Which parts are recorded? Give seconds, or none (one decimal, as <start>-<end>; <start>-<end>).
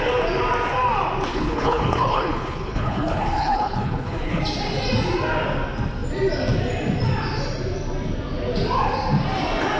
0.0-1.3; 4.4-9.8